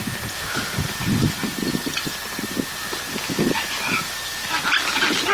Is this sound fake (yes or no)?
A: no